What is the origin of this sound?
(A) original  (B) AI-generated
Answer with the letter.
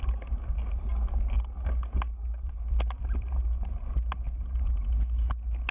A